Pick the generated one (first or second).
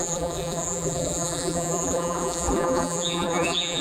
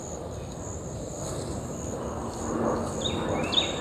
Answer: first